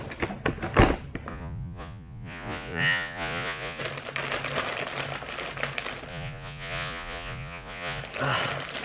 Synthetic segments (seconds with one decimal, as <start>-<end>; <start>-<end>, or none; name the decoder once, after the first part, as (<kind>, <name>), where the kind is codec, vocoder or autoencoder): 1.3-3.8 (vocoder, Vocos); 6.1-8.0